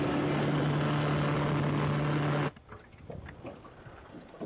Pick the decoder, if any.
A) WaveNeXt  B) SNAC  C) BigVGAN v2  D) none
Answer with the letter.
D